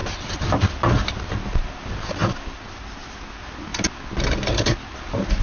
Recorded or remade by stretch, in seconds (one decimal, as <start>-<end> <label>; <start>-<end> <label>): 0.0-5.4 recorded